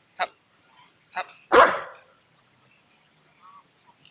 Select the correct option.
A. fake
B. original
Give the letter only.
A